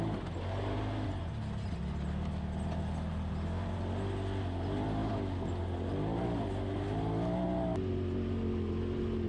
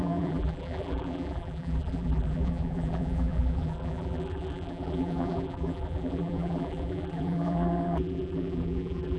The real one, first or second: first